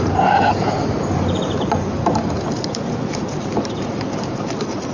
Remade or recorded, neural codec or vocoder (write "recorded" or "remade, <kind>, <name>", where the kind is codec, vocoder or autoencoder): remade, vocoder, BigVGAN v2